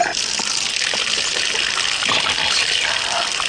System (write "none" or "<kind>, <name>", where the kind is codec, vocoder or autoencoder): none